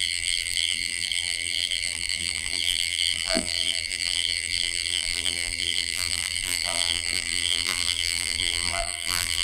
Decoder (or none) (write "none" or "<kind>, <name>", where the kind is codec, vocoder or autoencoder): vocoder, BigVGAN v2